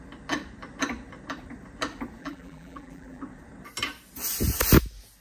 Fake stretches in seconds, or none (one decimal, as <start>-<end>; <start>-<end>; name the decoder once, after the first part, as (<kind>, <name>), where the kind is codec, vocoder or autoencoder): 2.2-3.2 (vocoder, BigVGAN v2)